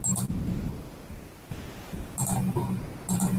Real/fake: real